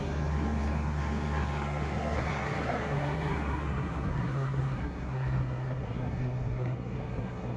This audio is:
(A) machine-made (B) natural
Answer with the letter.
A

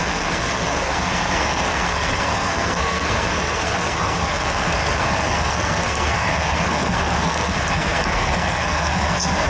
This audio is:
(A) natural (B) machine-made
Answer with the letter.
B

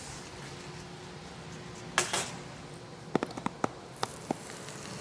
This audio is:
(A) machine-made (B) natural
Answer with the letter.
B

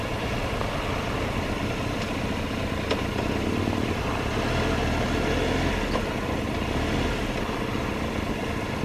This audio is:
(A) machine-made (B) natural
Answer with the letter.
B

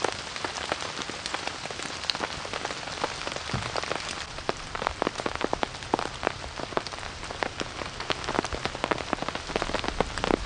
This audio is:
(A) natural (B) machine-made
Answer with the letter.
A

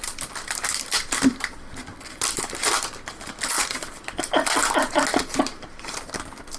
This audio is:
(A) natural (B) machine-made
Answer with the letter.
A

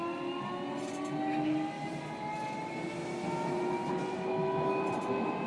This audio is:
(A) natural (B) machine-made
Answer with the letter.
A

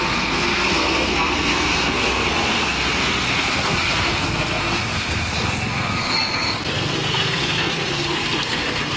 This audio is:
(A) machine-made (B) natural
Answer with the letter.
A